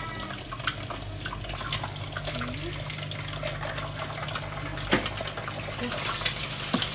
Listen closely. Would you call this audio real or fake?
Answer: real